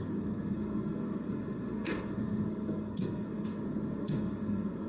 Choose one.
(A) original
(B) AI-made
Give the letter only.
B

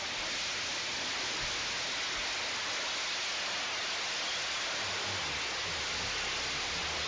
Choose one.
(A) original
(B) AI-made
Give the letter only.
A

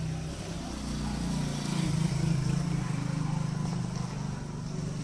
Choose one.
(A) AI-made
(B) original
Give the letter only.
B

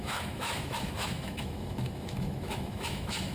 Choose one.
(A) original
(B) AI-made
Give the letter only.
B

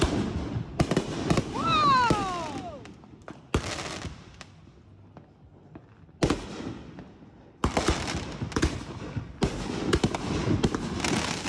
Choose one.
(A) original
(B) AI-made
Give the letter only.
A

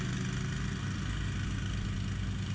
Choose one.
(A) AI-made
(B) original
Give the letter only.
B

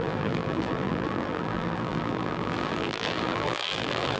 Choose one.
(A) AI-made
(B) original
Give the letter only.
A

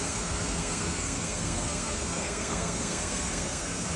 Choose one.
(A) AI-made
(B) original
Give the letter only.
A